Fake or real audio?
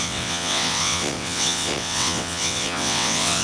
fake